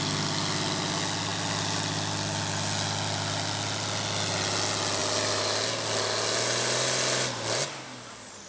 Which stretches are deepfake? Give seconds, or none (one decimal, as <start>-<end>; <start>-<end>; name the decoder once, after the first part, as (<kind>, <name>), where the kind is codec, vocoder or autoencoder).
none

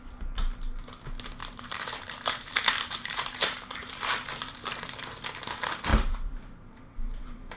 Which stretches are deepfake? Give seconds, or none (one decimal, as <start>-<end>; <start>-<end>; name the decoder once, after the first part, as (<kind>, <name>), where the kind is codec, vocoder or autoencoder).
1.4-5.3 (vocoder, BigVGAN v2); 5.9-7.6